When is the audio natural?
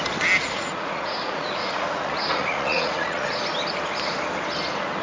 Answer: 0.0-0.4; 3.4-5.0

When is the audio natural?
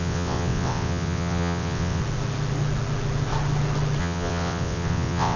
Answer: 2.0-4.0